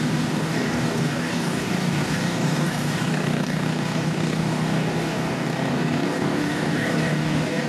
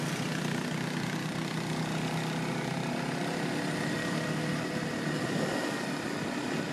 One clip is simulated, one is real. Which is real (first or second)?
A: second